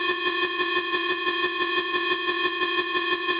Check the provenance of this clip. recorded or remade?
remade